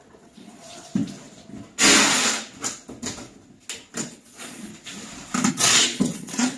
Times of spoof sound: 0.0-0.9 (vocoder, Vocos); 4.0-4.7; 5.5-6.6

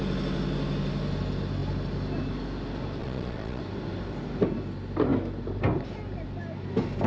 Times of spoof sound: 3.0-3.6 (vocoder, Vocos)

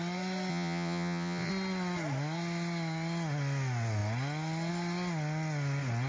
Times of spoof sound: 0.5-1.5 (vocoder, Vocos)

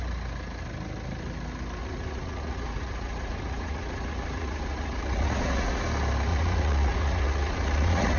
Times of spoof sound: 1.8-5.8 (vocoder, Vocos); 6.3-8.2

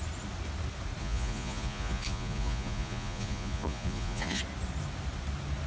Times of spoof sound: 1.0-4.4 (vocoder, Vocos)

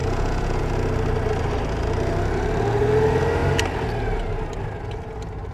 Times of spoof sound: 0.0-0.7 (vocoder, Vocos)

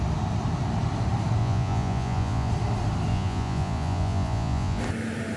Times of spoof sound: 1.4-2.5 (vocoder, Vocos); 3.1-4.8